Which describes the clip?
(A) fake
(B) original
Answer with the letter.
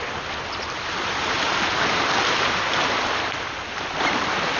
B